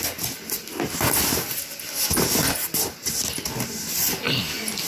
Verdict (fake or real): real